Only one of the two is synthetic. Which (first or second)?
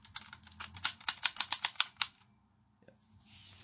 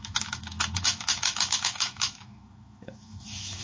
second